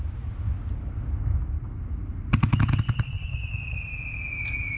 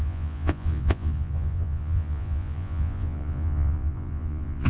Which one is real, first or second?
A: first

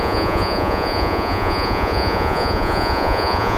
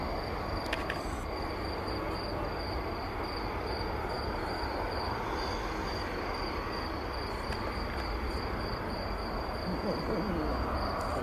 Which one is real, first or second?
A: second